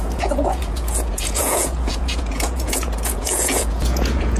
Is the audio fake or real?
fake